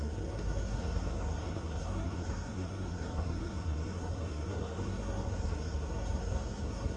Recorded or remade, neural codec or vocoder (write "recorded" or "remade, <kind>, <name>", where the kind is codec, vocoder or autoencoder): remade, codec, SNAC